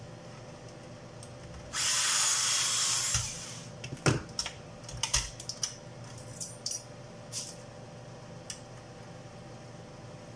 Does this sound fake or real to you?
real